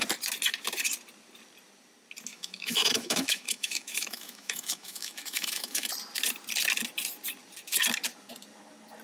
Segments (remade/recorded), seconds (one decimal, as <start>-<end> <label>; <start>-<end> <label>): 0.0-2.3 recorded; 2.3-5.9 remade; 5.9-9.0 recorded